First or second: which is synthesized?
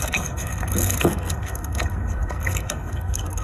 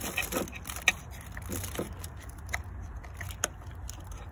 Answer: first